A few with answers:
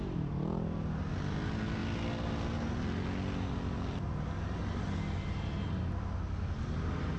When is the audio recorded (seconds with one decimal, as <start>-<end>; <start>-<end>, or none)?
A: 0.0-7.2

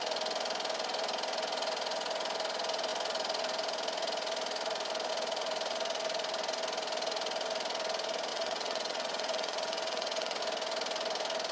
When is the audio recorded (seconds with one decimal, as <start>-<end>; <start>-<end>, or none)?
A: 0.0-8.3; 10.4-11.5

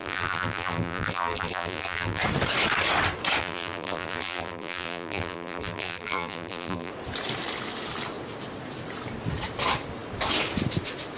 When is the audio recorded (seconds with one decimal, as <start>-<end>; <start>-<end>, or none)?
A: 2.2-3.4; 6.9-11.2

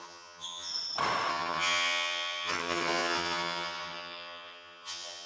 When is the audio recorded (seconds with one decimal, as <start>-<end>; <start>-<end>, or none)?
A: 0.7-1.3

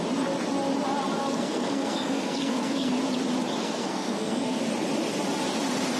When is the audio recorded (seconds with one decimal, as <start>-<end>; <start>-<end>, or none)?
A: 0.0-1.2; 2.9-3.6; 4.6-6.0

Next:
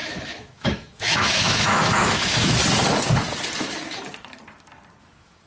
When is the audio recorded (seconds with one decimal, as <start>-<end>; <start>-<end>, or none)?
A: 2.6-5.0

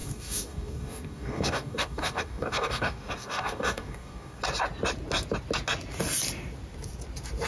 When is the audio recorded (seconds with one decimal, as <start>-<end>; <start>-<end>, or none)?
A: 4.4-7.5

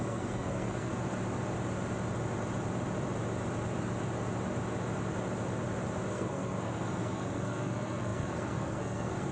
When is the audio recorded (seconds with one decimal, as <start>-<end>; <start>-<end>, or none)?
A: 0.9-6.1